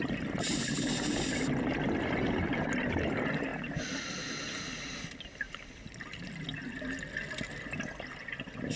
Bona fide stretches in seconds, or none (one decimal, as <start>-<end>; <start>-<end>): 0.0-8.8